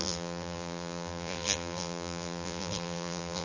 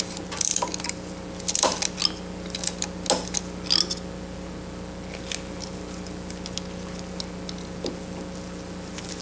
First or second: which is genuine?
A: second